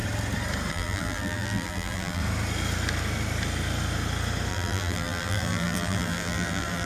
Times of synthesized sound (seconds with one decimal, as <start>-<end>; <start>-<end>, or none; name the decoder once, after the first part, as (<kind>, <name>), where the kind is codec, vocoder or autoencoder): 0.7-2.2 (vocoder, BigVGAN v2); 4.5-6.9